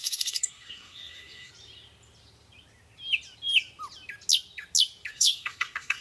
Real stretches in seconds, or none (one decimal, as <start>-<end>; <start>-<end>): 1.5-5.1